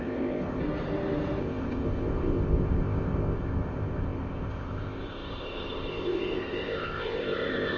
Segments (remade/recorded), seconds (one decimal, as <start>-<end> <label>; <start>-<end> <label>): 0.0-0.6 remade; 0.6-1.4 recorded; 1.4-7.8 remade